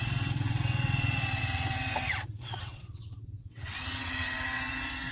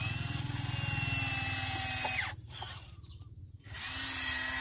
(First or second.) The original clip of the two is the second